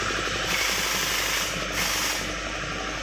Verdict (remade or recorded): recorded